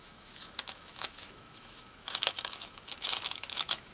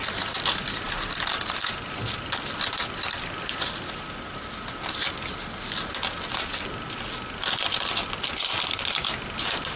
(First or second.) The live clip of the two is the second